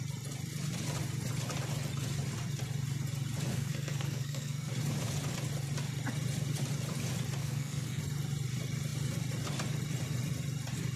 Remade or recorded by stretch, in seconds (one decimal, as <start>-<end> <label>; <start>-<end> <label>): 0.0-3.5 recorded; 3.5-4.7 remade; 4.7-7.4 recorded; 7.4-8.0 remade; 8.0-11.0 recorded